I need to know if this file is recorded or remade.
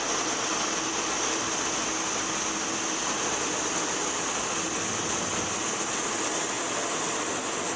recorded